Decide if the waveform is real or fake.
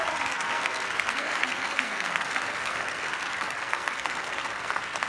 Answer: fake